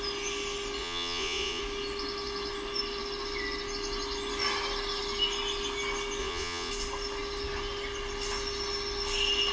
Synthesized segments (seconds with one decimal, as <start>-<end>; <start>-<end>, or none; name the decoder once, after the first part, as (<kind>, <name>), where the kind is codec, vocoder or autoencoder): 0.8-1.6 (vocoder, Vocos); 6.2-6.7